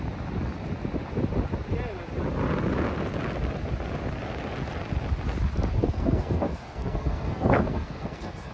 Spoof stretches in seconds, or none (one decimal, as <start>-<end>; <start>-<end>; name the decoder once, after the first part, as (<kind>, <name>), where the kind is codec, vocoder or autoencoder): 5.8-8.5 (codec, SNAC)